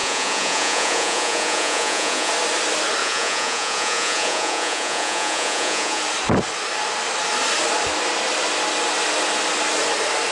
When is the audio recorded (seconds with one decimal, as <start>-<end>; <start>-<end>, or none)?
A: 2.3-3.0; 6.0-10.3